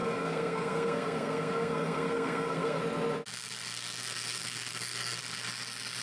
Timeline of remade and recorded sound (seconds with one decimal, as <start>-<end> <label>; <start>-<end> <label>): 0.0-2.8 remade; 2.8-3.7 recorded; 3.7-5.2 remade; 5.2-6.0 recorded

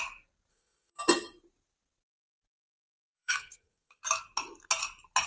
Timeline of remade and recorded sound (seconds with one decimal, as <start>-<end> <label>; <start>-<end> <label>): 0.0-0.5 recorded; 0.5-1.0 remade; 1.0-2.8 recorded; 2.8-4.0 remade; 4.0-5.3 recorded